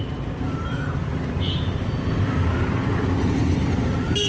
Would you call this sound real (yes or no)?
yes